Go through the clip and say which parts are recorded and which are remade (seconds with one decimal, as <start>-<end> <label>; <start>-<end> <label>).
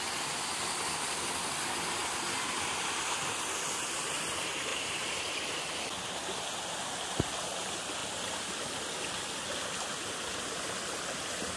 0.0-11.6 recorded